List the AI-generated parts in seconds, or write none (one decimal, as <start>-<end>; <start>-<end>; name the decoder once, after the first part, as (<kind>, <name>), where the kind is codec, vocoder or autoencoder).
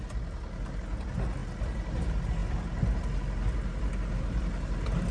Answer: none